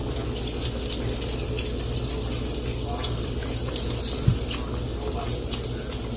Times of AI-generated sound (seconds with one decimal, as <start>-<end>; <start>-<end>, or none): none